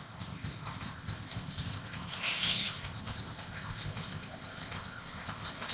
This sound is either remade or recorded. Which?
remade